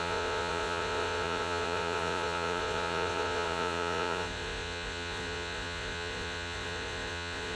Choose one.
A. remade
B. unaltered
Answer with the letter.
A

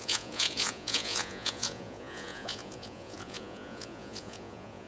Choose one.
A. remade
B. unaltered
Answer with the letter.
A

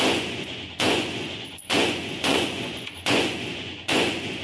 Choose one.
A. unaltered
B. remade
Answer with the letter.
B